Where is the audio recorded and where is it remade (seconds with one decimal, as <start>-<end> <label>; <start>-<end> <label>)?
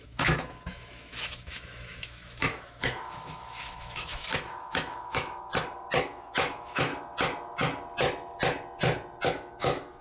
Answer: 0.0-5.5 remade; 5.5-6.0 recorded; 6.0-6.9 remade; 6.9-9.3 recorded; 9.3-10.0 remade